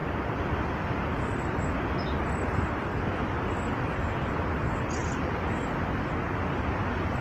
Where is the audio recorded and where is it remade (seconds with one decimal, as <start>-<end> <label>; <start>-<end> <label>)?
0.0-7.2 recorded